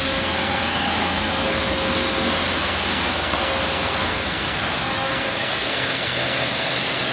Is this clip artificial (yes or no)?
yes